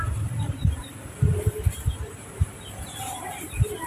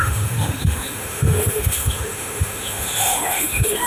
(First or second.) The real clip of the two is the first